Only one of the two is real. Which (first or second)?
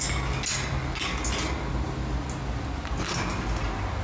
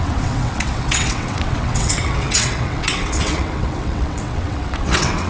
first